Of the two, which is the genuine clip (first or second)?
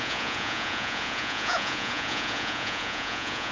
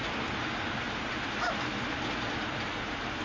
second